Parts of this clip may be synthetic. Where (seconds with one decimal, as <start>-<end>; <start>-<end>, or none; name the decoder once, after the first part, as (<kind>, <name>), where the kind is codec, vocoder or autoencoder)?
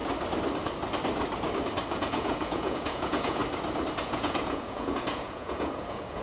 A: 1.9-3.4 (vocoder, Vocos); 4.0-6.2